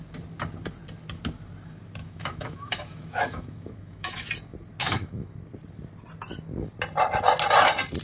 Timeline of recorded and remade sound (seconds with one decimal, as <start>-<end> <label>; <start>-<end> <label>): 0.0-2.0 recorded; 2.0-4.3 remade; 4.3-4.8 recorded; 4.8-5.5 remade; 5.5-8.0 recorded